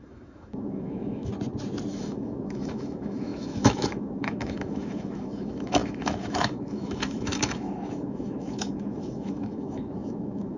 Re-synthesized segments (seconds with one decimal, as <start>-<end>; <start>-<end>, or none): 0.0-1.3; 1.9-10.6